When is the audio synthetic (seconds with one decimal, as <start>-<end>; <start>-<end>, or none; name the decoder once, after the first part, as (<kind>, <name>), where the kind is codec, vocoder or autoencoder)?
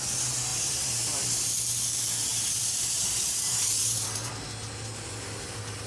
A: 0.5-1.5 (vocoder, BigVGAN v2); 2.3-4.3